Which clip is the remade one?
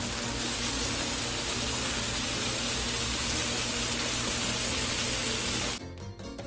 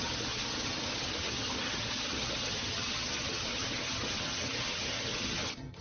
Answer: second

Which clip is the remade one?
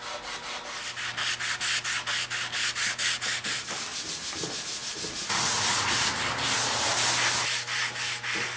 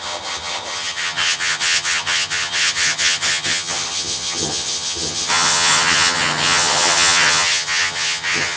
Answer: second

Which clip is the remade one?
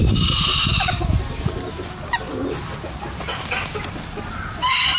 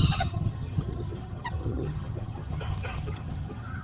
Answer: second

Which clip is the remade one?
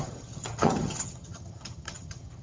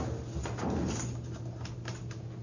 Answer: first